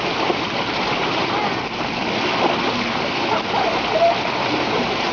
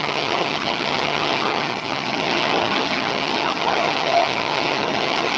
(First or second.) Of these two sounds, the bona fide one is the first